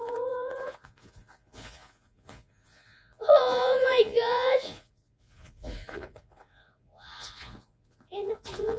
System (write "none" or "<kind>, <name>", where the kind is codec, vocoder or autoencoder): vocoder, Vocos